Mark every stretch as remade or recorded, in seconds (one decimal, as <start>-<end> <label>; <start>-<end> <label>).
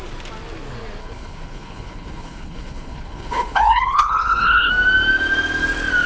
0.0-1.0 recorded; 1.0-4.7 remade; 4.7-6.1 recorded